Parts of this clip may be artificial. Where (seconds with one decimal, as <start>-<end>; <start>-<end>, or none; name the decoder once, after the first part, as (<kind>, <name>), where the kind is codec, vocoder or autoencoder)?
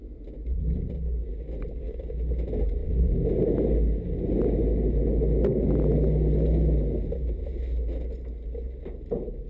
none